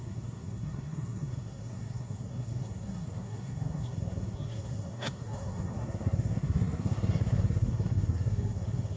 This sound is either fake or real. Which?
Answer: fake